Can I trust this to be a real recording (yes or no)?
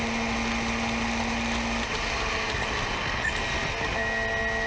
yes